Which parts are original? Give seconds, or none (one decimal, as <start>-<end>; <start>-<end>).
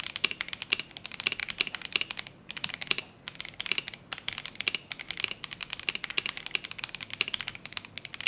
0.0-8.3